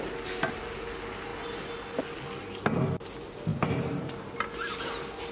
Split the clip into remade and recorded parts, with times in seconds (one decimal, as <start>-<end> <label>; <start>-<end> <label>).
0.0-3.5 recorded; 3.5-4.1 remade; 4.1-5.3 recorded